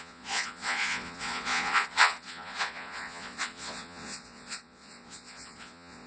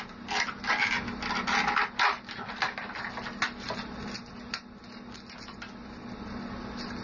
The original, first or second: second